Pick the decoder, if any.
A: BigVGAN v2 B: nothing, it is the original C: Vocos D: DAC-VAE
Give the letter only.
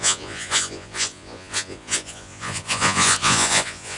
C